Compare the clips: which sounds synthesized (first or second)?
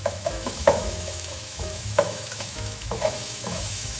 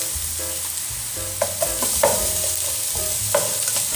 first